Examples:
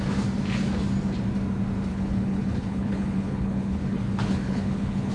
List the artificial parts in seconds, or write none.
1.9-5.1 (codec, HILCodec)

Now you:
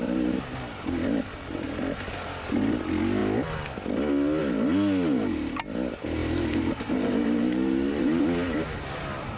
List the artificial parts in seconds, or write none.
6.2-8.2 (vocoder, BigVGAN v2)

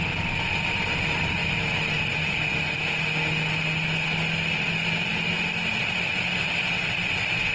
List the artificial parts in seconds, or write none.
none